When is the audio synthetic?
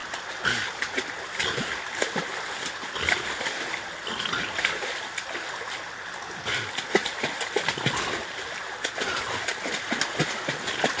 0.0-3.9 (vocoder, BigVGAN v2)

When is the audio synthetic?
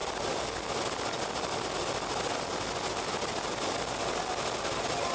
none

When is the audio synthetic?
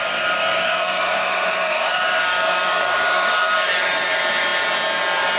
0.5-3.7 (codec, DAC)